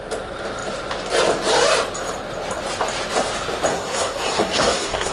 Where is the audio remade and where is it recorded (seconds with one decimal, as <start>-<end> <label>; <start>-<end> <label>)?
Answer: 0.0-3.7 recorded; 3.7-5.1 remade